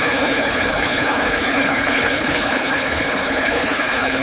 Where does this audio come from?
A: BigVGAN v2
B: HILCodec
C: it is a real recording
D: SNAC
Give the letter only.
B